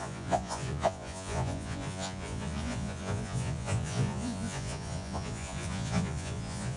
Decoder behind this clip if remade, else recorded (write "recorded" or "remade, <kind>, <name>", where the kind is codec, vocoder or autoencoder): remade, vocoder, Vocos